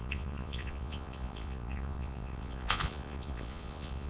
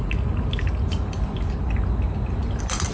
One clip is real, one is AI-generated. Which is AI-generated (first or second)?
first